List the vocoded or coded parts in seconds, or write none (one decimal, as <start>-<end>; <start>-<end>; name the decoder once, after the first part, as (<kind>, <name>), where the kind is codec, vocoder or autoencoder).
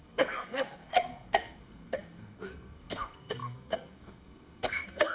0.0-5.1 (codec, SNAC)